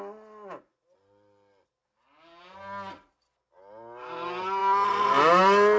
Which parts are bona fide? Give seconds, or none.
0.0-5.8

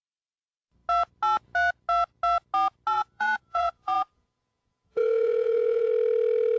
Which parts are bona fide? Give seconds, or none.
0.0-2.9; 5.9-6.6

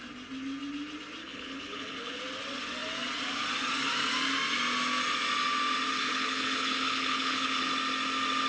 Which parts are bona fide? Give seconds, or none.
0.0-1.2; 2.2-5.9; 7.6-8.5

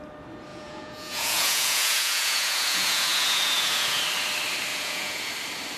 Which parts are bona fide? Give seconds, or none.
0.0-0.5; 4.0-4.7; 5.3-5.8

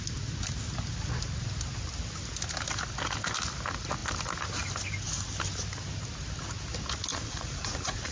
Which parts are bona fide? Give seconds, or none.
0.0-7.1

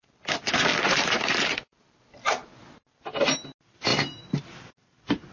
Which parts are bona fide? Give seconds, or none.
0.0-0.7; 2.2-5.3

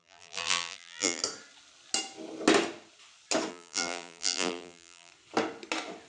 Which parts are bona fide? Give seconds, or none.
1.2-3.5; 5.1-6.1

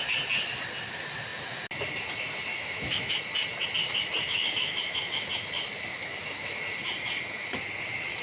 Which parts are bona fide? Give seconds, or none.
0.0-2.5; 3.2-3.8; 5.3-5.9; 6.6-8.2